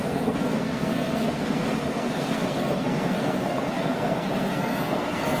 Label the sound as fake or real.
fake